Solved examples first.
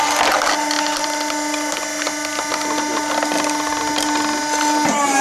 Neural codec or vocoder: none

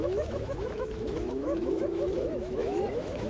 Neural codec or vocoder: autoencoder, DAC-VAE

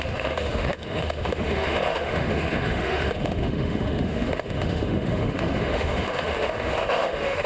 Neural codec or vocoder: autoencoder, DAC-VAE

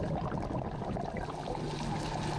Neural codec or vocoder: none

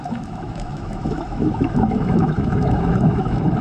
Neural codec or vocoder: autoencoder, DAC-VAE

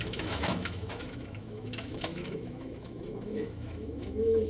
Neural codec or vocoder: autoencoder, DAC-VAE